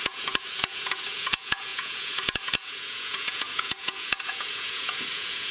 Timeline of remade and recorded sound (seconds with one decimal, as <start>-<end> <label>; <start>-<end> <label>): 0.0-5.5 remade